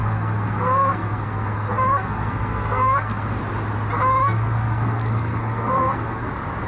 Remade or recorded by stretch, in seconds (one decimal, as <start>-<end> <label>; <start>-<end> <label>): 0.0-3.4 remade; 3.4-4.2 recorded; 4.2-6.3 remade; 6.3-6.7 recorded